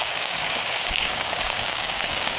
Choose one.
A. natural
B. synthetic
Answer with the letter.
B